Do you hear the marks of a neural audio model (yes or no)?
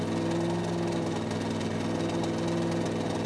no